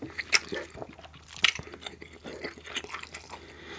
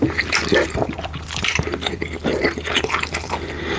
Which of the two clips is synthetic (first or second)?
second